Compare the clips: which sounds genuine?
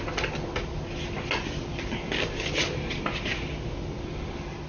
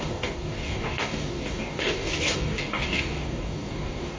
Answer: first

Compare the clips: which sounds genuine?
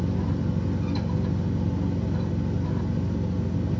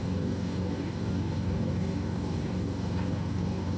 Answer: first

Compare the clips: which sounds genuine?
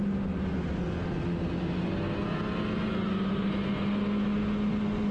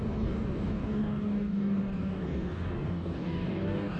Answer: first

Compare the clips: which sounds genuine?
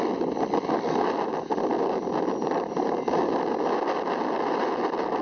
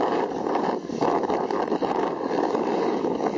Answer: first